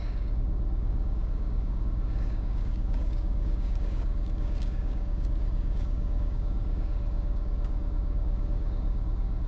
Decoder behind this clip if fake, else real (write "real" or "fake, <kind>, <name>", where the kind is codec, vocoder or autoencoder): fake, codec, DAC